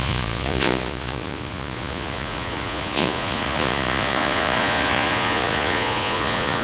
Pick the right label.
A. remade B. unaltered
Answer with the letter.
A